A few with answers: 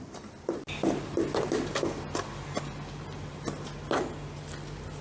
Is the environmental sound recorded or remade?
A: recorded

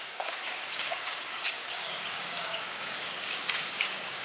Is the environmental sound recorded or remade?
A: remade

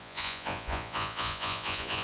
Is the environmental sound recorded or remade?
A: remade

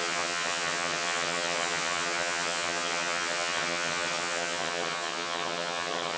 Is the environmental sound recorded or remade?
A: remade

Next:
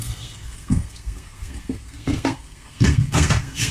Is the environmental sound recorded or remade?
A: remade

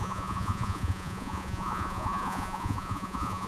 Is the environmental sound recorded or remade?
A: remade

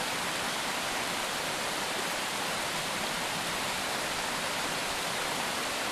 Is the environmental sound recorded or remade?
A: remade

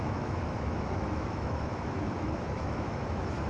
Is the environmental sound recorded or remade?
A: remade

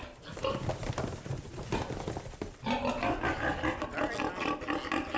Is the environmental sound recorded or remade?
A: recorded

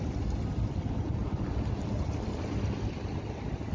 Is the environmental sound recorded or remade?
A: recorded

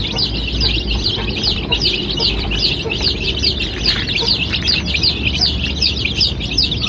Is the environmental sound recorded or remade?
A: remade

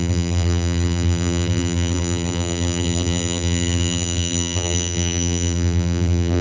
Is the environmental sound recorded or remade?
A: remade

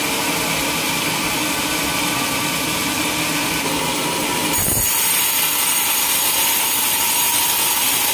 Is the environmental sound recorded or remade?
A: recorded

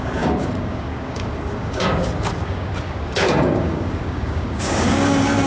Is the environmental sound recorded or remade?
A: remade